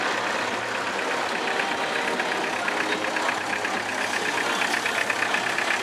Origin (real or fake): real